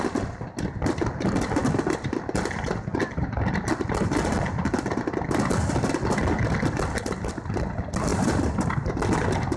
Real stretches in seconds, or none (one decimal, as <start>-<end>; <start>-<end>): 0.0-8.1; 8.9-9.6